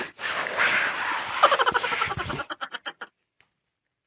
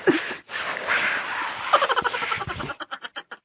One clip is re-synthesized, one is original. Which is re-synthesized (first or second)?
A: second